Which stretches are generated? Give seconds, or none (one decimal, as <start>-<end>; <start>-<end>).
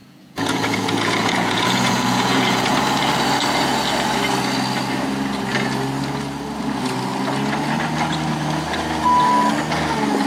0.0-2.7